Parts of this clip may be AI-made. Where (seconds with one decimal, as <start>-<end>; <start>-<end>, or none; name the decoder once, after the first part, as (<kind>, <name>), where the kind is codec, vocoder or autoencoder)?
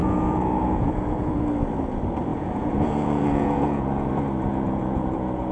0.0-1.4 (vocoder, Vocos); 2.3-4.1; 4.5-5.5